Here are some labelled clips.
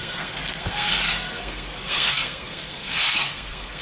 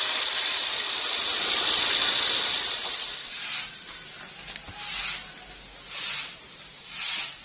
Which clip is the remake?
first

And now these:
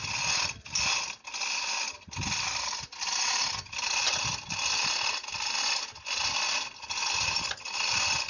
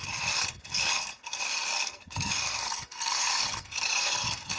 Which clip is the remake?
second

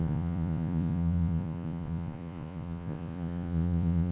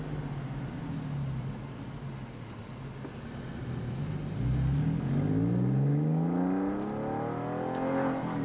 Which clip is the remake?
first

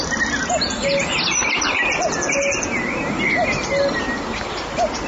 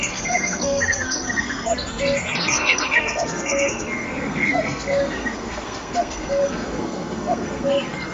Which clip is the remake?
second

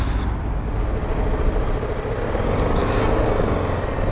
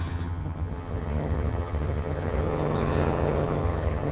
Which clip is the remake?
second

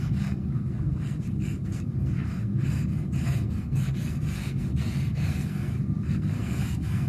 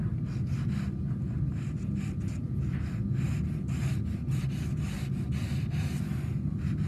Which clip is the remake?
first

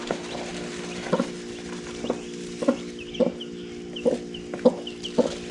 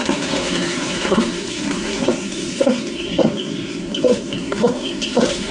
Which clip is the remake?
second